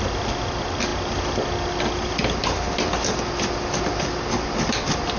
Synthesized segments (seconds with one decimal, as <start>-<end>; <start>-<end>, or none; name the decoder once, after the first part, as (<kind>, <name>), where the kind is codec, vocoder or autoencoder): none